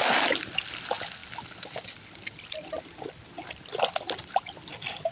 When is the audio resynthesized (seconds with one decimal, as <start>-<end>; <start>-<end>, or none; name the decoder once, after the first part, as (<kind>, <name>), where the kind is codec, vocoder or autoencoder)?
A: none